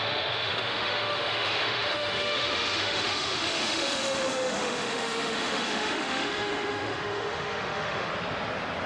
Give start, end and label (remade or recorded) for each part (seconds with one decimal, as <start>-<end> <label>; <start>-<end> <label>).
0.0-8.1 remade; 8.1-8.9 recorded